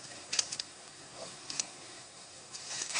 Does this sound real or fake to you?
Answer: fake